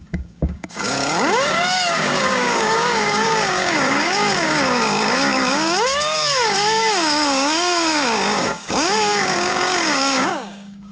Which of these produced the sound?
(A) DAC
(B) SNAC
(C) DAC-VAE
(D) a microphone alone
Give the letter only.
A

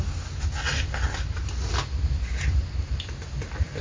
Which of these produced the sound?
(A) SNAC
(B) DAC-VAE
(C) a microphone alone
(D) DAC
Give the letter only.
C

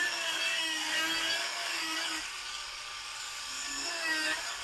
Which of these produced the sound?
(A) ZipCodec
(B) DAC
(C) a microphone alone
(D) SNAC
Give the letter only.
B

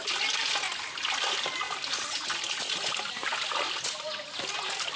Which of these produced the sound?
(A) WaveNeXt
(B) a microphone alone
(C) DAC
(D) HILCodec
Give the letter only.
B